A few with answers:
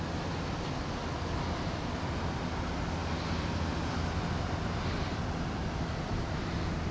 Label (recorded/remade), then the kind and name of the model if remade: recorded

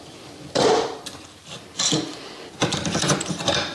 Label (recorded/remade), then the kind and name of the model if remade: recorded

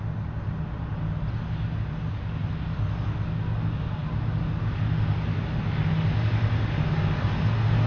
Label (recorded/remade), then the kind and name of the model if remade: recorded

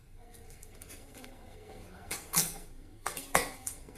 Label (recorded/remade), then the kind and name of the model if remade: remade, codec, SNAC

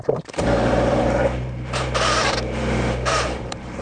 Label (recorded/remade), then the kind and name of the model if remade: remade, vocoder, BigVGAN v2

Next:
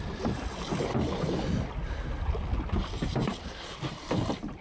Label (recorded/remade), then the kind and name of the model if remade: recorded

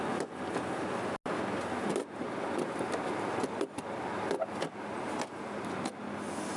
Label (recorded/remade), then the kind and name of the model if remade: recorded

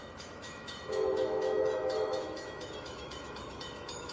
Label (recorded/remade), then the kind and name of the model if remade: remade, autoencoder, DAC-VAE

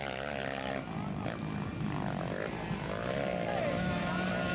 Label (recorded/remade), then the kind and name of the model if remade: recorded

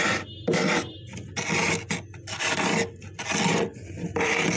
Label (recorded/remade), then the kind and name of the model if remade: recorded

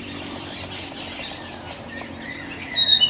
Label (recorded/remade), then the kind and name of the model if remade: recorded